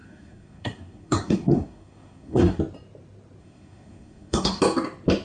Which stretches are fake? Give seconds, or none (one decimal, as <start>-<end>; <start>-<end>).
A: 0.0-2.6; 3.4-4.6